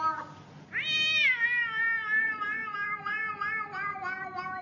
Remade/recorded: recorded